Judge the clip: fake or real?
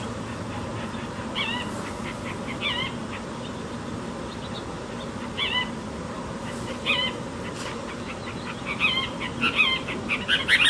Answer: real